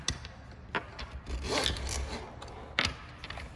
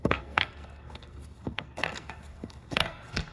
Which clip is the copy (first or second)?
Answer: second